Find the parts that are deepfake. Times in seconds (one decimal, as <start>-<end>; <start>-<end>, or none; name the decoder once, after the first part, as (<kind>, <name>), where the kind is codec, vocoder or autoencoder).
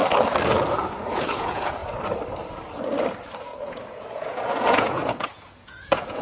1.1-1.8 (vocoder, Vocos); 3.4-6.2